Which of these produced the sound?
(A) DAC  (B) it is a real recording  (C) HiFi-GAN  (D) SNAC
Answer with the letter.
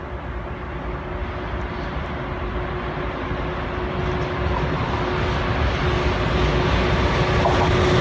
B